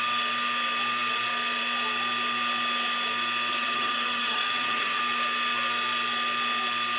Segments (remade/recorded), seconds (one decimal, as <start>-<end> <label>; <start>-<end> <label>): 0.0-3.5 recorded; 3.5-5.0 remade; 5.0-7.0 recorded